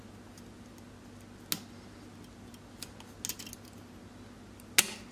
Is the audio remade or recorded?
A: recorded